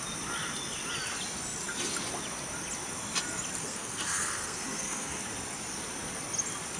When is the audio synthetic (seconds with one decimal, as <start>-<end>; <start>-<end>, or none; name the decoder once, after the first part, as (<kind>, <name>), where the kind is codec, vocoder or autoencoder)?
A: 3.6-5.2 (codec, SNAC)